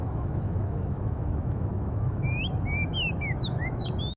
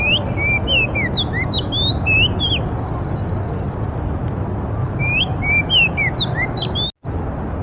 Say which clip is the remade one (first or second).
first